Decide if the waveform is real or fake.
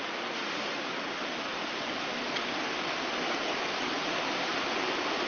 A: real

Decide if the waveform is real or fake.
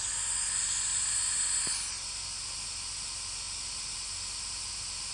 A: real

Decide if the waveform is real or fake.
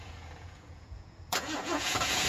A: fake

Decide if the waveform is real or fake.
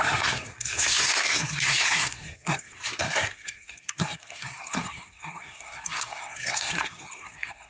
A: fake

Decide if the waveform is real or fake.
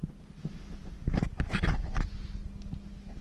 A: real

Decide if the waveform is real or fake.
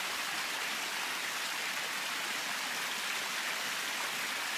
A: real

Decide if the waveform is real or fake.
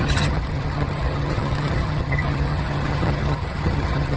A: fake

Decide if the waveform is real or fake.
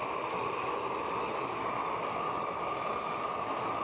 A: real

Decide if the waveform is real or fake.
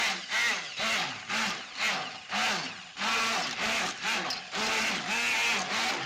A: real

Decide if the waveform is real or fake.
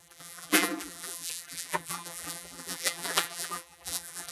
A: fake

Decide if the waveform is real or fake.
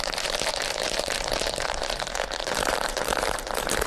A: fake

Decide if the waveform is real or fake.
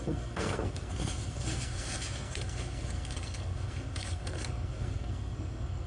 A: fake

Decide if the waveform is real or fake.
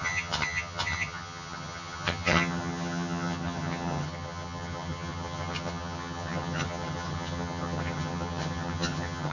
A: fake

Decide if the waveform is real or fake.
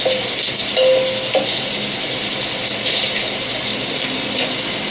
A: real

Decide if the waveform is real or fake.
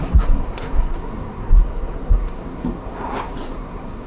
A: fake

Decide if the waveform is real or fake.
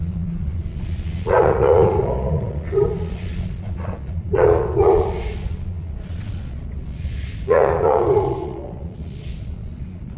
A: fake